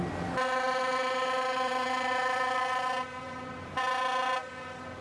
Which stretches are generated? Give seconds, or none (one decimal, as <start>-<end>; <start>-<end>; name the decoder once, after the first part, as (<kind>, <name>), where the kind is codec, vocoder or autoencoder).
0.8-3.8 (vocoder, BigVGAN v2)